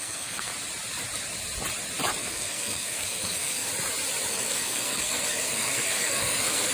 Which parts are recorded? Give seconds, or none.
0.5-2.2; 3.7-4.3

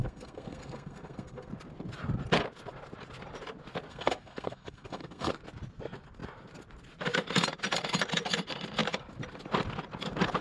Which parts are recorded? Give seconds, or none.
1.5-3.9; 5.3-10.4

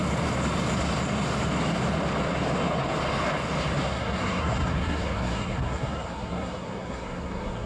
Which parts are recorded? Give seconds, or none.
0.0-3.8